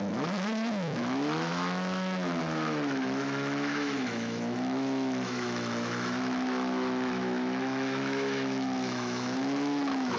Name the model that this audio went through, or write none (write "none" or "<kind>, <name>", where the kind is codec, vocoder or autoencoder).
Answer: autoencoder, DAC-VAE